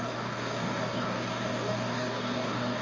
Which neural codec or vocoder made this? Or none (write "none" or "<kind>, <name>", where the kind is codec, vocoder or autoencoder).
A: codec, DAC